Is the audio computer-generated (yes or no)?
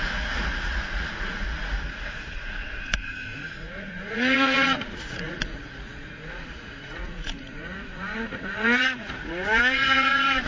yes